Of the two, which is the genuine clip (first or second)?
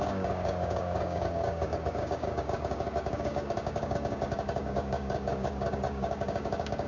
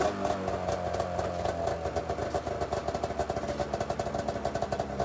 second